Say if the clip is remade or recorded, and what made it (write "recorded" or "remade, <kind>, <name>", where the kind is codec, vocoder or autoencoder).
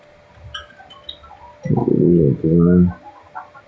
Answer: recorded